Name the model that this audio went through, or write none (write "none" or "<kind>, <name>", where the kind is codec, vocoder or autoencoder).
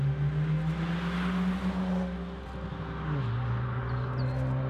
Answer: none